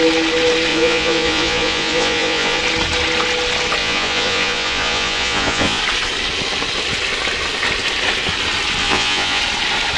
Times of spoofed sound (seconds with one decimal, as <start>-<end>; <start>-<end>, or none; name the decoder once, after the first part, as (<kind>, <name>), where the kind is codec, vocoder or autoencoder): 0.7-2.6 (vocoder, Vocos); 3.8-5.8; 8.8-9.4